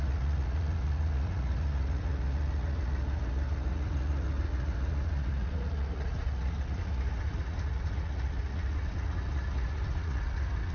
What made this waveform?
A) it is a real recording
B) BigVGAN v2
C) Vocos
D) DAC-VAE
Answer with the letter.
C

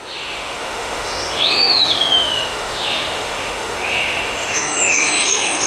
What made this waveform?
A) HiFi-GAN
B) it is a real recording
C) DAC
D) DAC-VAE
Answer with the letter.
D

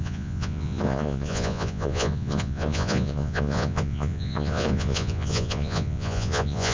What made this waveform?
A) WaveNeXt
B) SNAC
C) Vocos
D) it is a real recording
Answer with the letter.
C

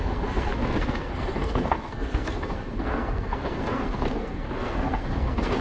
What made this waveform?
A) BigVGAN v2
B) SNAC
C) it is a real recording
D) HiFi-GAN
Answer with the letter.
B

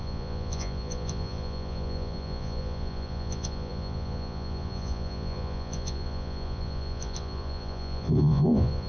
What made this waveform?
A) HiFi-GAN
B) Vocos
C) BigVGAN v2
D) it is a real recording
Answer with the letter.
B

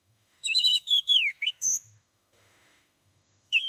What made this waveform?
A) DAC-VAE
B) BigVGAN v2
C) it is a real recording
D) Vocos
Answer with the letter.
A